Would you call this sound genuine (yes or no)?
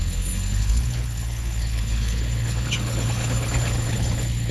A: no